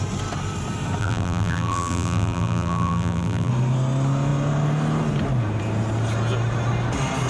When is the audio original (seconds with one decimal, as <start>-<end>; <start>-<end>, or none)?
0.0-1.0; 3.5-7.3